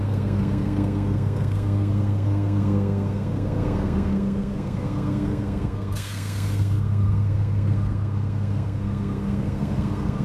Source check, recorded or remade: remade